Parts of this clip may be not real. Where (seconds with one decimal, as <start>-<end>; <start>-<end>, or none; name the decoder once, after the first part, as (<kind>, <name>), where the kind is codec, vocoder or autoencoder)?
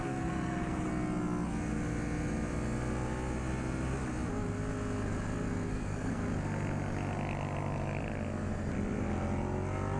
0.0-0.9 (codec, SNAC); 5.7-6.2